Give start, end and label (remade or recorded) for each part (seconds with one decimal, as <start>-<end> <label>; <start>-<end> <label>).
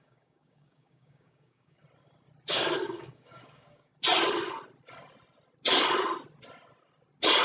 0.0-1.8 remade; 1.8-2.5 recorded; 2.5-3.9 remade; 3.9-7.4 recorded